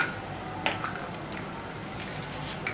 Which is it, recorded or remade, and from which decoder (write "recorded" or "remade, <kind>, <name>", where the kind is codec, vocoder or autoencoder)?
recorded